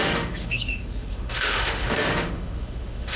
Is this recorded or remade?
remade